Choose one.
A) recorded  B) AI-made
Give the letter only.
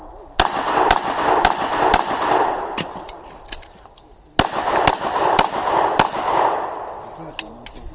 A